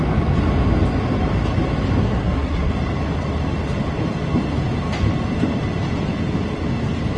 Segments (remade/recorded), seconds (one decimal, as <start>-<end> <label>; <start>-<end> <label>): 0.0-2.0 recorded; 2.0-2.7 remade; 2.7-7.2 recorded